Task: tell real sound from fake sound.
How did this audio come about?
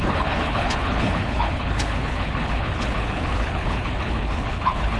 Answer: fake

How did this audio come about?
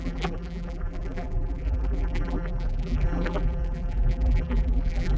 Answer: fake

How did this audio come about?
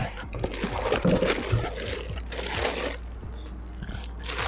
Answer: real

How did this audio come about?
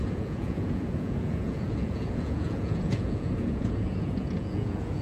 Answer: fake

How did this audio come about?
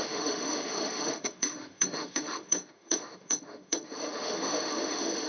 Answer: fake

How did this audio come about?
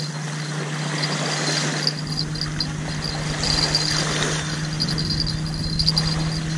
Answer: real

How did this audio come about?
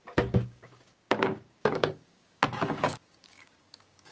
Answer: fake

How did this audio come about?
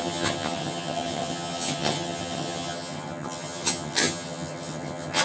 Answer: fake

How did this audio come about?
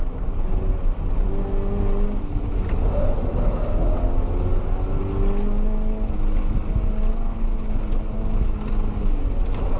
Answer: real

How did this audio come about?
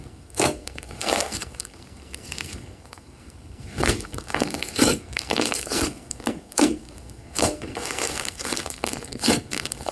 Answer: fake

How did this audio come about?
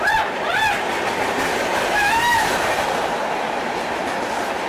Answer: real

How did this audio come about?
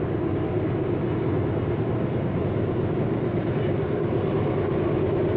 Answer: real